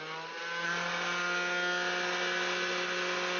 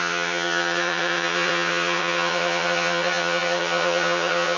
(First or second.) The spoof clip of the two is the second